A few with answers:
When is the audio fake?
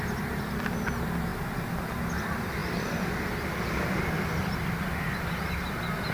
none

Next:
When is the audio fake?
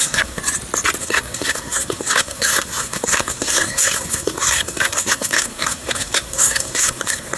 0.0-0.4 (codec, SNAC); 1.0-7.4